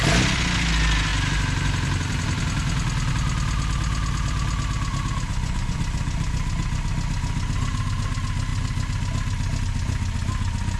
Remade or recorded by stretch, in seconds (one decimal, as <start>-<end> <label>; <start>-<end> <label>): 0.0-5.3 recorded; 5.3-5.8 remade; 5.8-10.8 recorded